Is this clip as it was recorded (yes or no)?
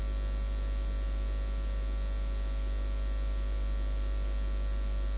yes